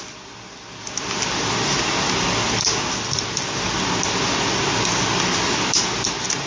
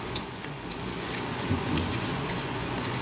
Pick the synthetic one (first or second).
second